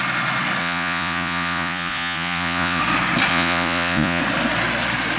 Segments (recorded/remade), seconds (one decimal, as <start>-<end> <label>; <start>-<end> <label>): 0.0-0.6 recorded; 0.6-2.8 remade; 2.8-3.3 recorded; 3.3-4.2 remade; 4.2-5.2 recorded